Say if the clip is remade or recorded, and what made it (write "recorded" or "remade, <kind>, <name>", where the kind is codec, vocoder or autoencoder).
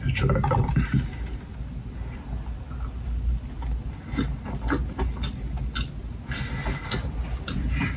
recorded